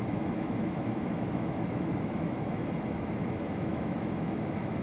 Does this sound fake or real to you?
fake